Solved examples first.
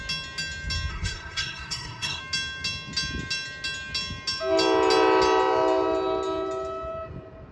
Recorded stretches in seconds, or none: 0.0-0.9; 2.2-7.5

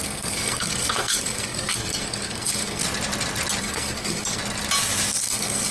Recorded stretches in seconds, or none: 2.8-3.6; 4.4-5.2

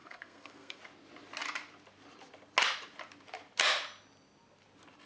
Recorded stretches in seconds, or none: 0.8-5.1

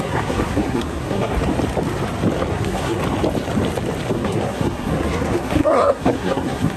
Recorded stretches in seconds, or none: 1.3-2.5; 3.0-4.1

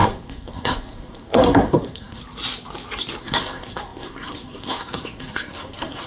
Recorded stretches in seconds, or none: 2.2-3.2

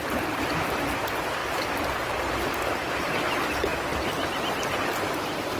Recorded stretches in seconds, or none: 0.0-5.6

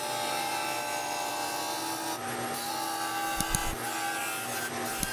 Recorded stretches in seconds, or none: 0.0-5.1

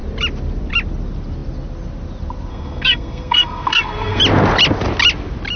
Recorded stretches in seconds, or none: 0.0-2.5; 4.2-5.6